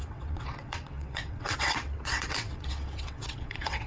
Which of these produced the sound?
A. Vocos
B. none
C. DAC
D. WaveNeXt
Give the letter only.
D